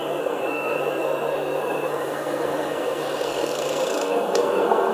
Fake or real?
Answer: fake